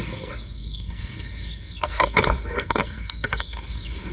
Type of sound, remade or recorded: remade